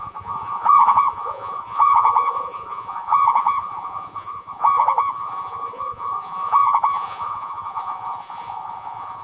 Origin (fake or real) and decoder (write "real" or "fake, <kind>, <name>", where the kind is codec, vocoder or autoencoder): fake, vocoder, Vocos